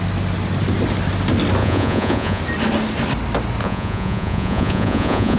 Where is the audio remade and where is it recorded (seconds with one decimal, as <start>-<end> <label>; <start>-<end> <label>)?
0.0-1.6 recorded; 1.6-2.4 remade; 2.4-3.6 recorded; 3.6-5.4 remade